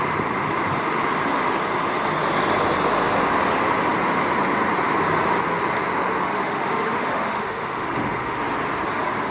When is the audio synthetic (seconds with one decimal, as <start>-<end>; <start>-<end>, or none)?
6.3-8.4